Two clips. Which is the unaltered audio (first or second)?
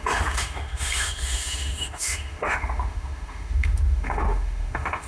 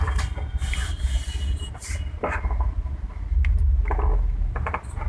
second